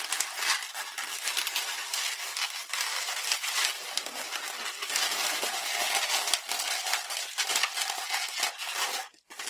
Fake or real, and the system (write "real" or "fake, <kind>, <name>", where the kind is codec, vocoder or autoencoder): real